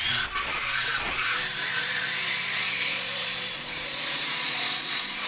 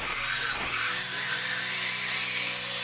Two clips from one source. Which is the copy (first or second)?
first